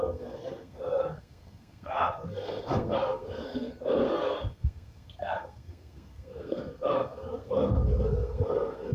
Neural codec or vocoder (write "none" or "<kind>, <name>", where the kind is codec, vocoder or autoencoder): codec, SNAC